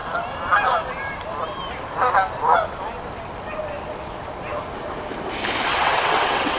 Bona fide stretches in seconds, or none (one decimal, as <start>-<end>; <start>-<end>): 0.0-5.7